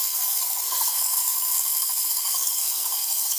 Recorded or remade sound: remade